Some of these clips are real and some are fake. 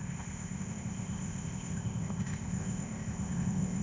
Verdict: fake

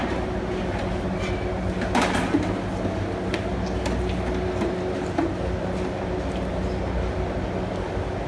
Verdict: real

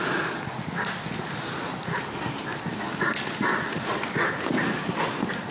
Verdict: real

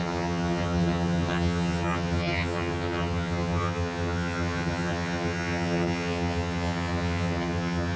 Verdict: fake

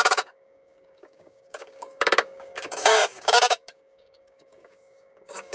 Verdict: fake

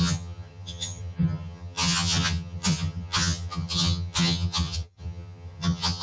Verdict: fake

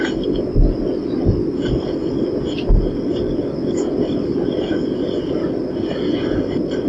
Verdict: real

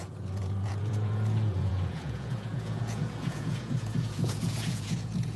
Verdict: fake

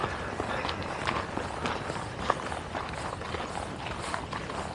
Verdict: real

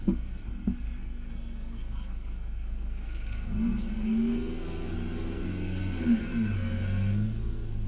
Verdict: fake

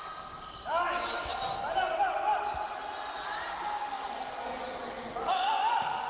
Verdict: real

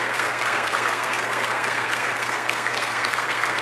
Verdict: fake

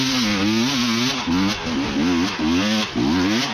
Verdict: real